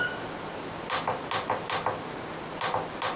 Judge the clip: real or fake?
real